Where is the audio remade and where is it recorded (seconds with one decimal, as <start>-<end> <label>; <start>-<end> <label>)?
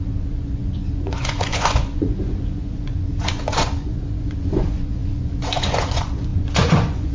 0.0-7.1 remade